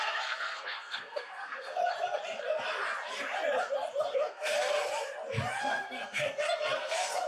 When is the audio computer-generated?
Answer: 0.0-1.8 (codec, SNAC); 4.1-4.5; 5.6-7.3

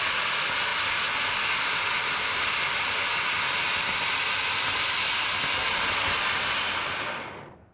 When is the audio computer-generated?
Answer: none

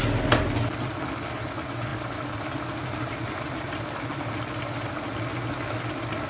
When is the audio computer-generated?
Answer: none

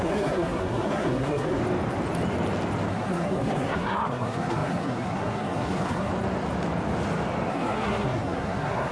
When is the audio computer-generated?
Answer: 0.0-1.6 (codec, SNAC); 2.9-6.1; 7.5-8.9

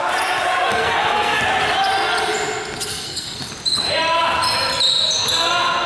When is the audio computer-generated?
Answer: 0.7-1.4 (codec, SNAC); 2.9-3.5